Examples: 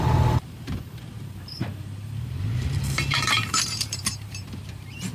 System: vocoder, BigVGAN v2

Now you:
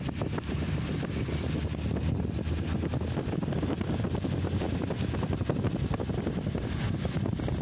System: none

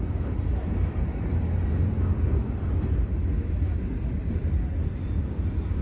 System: none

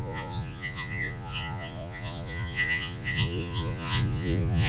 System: vocoder, Vocos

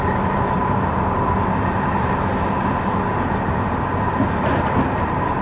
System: none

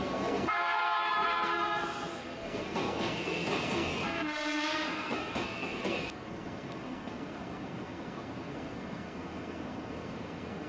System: codec, SNAC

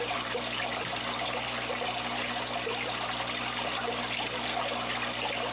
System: none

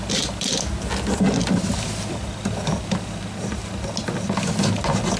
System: none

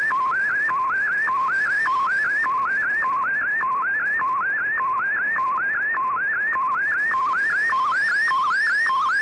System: none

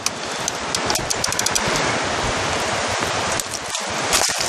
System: none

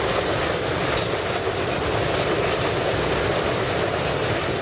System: none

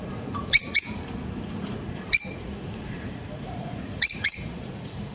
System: vocoder, Vocos